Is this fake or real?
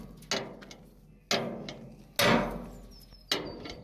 real